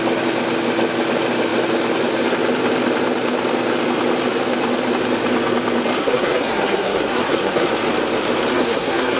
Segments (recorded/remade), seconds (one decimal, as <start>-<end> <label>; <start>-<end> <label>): 0.0-6.0 recorded; 6.0-7.7 remade; 7.7-8.5 recorded; 8.5-9.2 remade